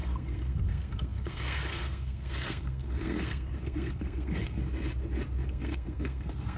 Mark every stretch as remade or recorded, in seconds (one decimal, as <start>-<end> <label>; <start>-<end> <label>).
0.0-4.6 remade; 4.6-5.5 recorded; 5.5-6.6 remade